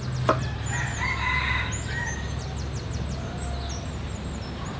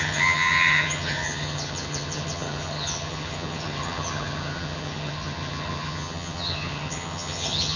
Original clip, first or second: first